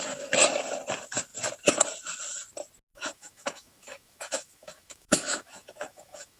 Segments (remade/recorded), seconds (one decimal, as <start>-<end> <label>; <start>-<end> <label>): 0.0-2.9 recorded; 2.9-6.4 remade